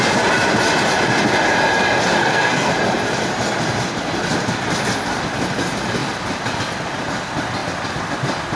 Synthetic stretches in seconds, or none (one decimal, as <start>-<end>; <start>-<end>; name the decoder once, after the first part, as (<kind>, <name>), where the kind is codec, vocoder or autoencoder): 2.2-2.7 (codec, SNAC)